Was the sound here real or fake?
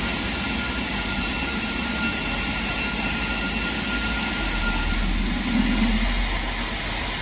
real